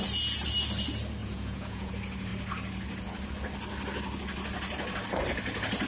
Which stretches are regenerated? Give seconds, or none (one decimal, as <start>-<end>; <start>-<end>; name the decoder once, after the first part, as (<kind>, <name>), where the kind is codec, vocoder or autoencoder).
1.2-1.9 (vocoder, Vocos)